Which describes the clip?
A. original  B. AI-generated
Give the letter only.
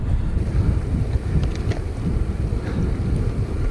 A